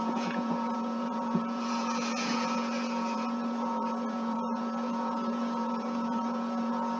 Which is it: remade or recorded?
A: remade